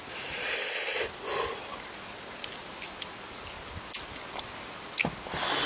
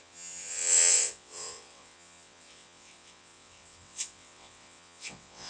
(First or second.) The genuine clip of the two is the first